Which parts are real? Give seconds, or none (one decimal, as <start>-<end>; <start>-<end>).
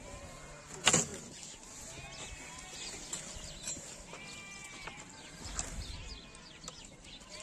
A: 0.0-7.4